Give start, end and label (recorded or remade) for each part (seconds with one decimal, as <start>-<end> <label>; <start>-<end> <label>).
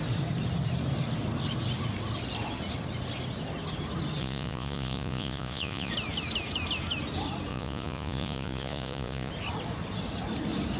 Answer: 0.0-4.2 recorded; 4.2-5.9 remade; 5.9-7.5 recorded; 7.5-9.3 remade; 9.3-10.8 recorded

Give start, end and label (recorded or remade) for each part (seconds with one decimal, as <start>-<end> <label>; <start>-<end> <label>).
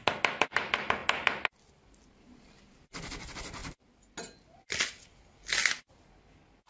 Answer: 0.0-6.7 recorded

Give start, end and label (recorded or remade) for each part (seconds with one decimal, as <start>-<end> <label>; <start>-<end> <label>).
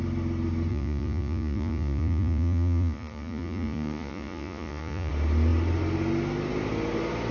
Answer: 0.0-0.7 recorded; 0.7-5.1 remade; 5.1-7.3 recorded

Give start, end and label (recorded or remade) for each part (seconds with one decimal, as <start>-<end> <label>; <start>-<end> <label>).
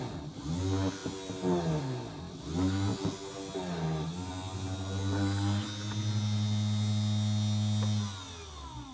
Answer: 0.0-8.9 recorded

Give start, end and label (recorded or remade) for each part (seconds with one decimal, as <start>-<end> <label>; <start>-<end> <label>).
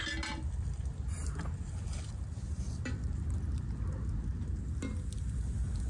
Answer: 0.0-5.9 recorded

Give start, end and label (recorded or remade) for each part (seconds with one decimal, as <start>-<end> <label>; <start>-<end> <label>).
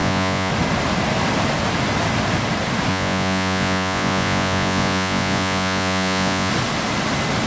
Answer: 0.0-0.5 remade; 0.5-2.9 recorded; 2.9-6.5 remade; 6.5-7.5 recorded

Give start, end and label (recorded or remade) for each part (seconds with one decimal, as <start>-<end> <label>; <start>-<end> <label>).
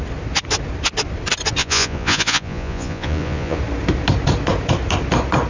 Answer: 0.0-1.6 recorded; 1.6-3.6 remade; 3.6-5.5 recorded